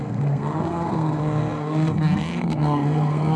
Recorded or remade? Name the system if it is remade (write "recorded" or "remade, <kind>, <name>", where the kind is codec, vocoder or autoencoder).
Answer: remade, codec, SNAC